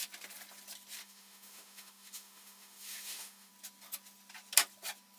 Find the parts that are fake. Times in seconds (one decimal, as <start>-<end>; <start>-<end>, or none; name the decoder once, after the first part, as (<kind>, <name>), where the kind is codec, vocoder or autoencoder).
1.0-3.5 (autoencoder, DAC-VAE)